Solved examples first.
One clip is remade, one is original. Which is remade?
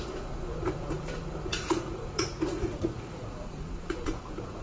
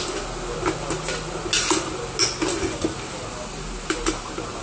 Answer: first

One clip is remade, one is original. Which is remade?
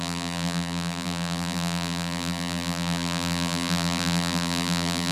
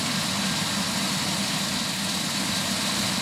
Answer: first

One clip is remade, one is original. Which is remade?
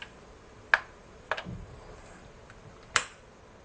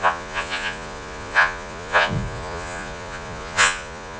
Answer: second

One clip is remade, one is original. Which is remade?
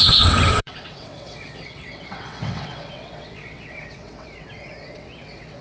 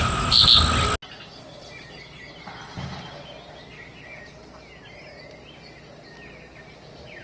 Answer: first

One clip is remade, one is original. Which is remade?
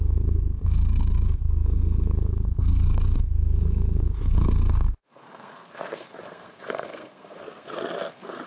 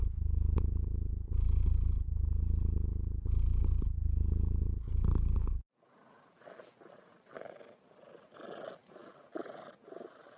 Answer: first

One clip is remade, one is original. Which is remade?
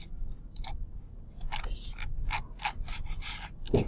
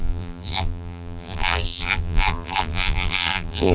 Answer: second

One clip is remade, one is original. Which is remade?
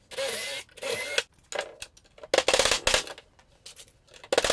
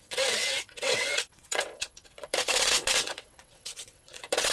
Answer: second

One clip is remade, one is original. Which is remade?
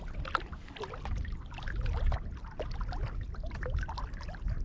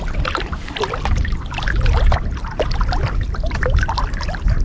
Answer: second